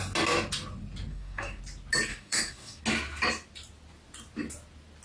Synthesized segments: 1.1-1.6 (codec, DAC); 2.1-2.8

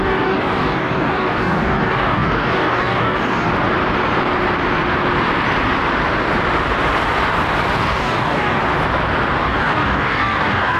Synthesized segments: 0.0-3.5 (codec, DAC); 7.8-8.6; 9.4-10.8

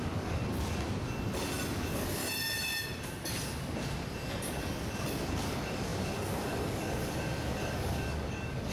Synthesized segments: 0.0-0.4 (codec, DAC); 1.8-2.2; 5.3-8.7